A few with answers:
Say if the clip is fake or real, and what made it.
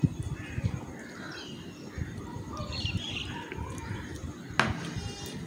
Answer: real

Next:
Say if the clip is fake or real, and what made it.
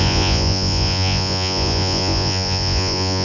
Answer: fake, vocoder, Vocos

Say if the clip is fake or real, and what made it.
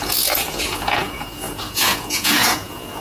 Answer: fake, vocoder, Vocos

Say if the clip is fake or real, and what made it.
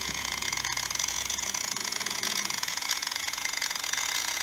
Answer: fake, vocoder, Vocos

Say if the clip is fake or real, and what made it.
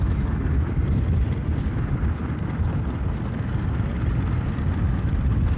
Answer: real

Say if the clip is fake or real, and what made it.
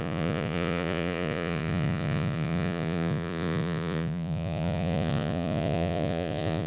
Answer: fake, vocoder, Vocos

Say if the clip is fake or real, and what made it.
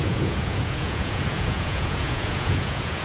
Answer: fake, vocoder, Vocos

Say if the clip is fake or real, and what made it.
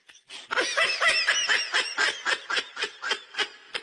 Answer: real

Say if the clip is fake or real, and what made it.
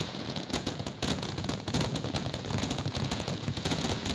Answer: fake, vocoder, Vocos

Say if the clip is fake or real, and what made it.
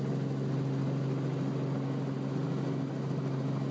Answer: real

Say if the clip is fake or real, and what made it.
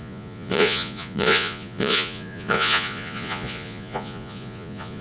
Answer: fake, vocoder, Vocos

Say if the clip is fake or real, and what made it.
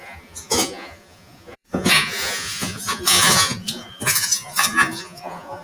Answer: fake, vocoder, Vocos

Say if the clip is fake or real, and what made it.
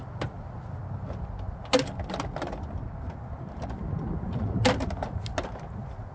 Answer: real